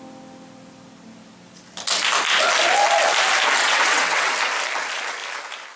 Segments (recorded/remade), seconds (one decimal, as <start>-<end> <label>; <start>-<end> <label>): 0.0-3.6 recorded; 3.6-4.3 remade; 4.3-5.8 recorded